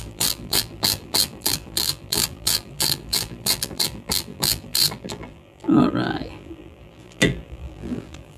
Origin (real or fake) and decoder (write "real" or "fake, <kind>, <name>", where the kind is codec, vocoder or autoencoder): fake, vocoder, BigVGAN v2